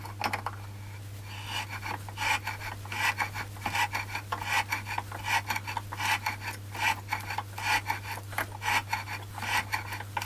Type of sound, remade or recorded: recorded